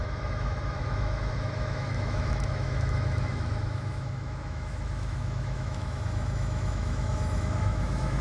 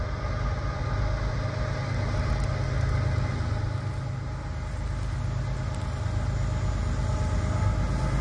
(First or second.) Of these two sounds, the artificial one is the first